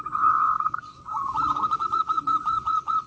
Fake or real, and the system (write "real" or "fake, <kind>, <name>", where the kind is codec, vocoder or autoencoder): fake, vocoder, WaveNeXt